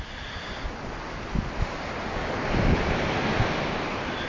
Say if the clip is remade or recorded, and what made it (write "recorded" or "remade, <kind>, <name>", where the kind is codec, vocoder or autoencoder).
recorded